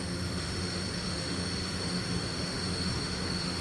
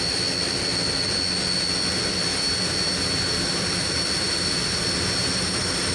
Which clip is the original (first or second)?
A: second